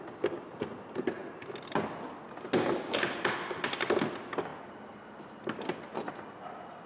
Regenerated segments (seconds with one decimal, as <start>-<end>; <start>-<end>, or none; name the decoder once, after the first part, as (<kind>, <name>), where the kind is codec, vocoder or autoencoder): none